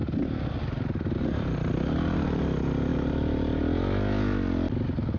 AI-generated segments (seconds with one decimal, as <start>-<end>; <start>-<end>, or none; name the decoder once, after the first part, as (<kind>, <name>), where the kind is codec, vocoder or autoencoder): 2.9-3.6 (vocoder, BigVGAN v2)